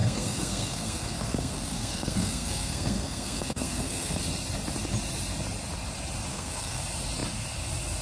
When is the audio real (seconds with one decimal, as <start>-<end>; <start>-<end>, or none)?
4.2-6.3; 6.8-8.0